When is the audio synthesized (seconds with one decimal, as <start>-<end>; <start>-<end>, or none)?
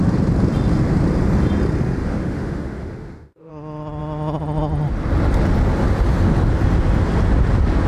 2.0-3.5